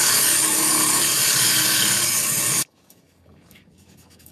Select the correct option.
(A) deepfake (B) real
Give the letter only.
A